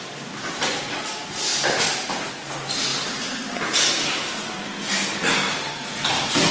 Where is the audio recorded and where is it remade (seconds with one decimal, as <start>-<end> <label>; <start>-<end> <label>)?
0.0-6.5 recorded